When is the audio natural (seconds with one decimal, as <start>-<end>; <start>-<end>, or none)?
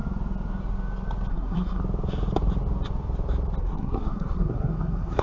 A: 0.0-1.3; 1.8-3.6